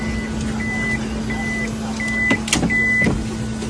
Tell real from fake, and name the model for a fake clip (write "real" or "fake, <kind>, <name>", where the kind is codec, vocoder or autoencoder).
real